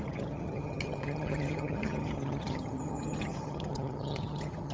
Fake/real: fake